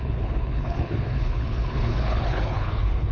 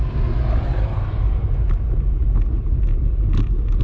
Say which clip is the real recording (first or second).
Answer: second